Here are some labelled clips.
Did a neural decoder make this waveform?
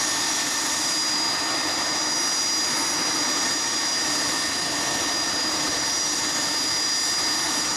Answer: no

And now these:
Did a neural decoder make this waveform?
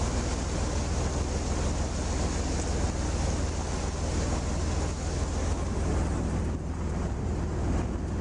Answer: no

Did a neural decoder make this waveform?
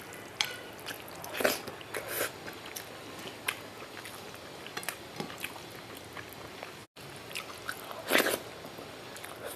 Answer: no